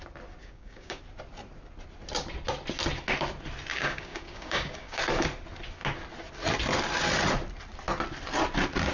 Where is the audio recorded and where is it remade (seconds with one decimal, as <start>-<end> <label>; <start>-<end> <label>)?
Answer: 0.0-0.4 recorded; 0.4-1.0 remade; 1.0-3.7 recorded; 3.7-5.0 remade; 5.0-8.9 recorded